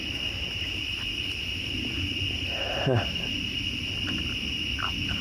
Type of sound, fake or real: real